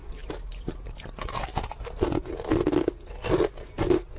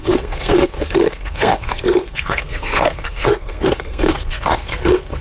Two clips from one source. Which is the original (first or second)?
first